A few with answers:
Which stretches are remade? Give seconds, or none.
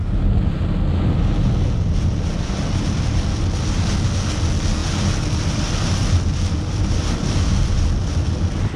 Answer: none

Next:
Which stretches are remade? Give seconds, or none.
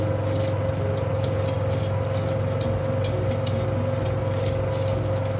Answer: none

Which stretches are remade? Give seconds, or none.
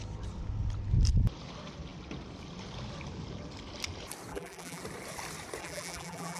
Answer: 4.3-4.8; 5.6-6.4